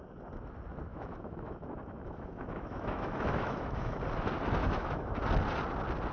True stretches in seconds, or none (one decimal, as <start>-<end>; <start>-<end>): 0.0-0.9; 4.0-4.6; 5.2-6.1